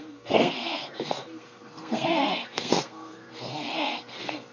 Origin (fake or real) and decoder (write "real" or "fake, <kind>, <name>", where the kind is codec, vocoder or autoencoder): fake, codec, SNAC